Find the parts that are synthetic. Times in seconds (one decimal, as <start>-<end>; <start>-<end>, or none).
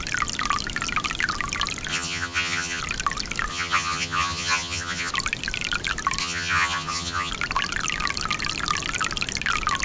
1.9-2.8; 3.5-5.1; 6.2-7.3